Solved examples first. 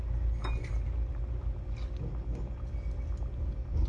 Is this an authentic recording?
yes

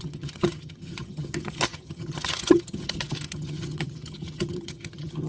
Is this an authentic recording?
no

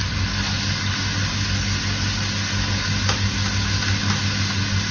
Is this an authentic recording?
yes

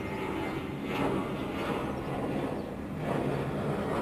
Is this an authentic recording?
yes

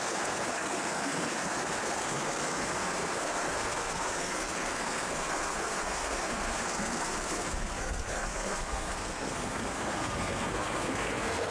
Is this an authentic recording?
no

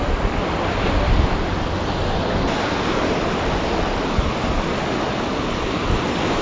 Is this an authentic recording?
yes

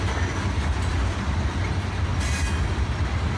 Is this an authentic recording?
yes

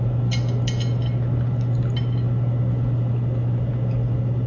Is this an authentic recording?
yes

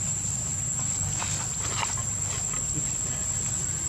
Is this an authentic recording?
yes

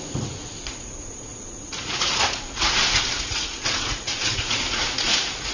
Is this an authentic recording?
no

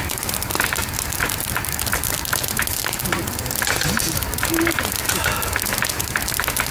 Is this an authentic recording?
yes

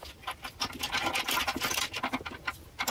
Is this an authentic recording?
yes